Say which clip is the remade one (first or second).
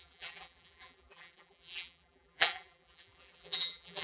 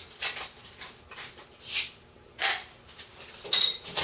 first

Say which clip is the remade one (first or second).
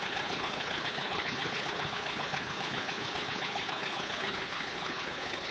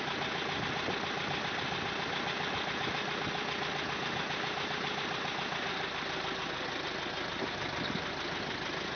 first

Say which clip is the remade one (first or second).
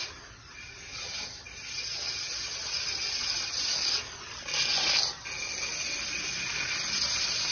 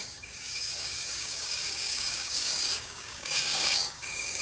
second